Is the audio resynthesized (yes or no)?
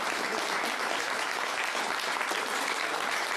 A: no